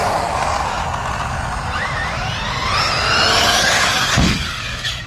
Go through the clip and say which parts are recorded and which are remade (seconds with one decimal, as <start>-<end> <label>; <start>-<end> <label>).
0.0-0.8 remade; 0.8-3.4 recorded; 3.4-5.1 remade